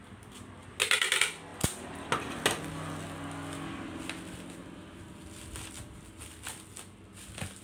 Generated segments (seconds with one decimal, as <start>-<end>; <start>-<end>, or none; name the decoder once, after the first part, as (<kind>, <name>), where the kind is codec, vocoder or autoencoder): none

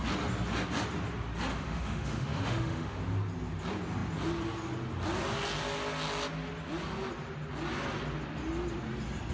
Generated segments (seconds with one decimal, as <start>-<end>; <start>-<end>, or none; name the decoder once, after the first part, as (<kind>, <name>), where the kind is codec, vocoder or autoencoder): 1.5-3.0 (autoencoder, DAC-VAE)

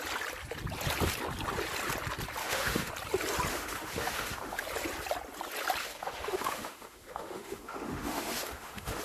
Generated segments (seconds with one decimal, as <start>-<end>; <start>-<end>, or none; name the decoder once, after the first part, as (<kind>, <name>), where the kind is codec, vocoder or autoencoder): 2.4-2.9 (autoencoder, DAC-VAE); 3.5-4.6; 5.8-9.0

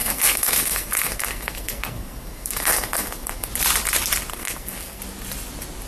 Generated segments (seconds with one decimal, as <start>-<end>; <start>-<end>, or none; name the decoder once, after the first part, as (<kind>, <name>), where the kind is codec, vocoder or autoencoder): 0.0-3.5 (codec, SNAC); 4.3-5.0

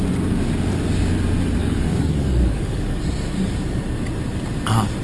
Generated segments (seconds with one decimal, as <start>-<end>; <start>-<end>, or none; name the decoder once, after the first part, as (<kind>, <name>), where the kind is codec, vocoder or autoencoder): 1.6-3.0 (codec, DAC)